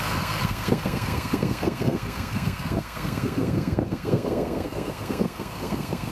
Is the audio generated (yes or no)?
yes